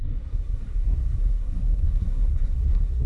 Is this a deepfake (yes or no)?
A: yes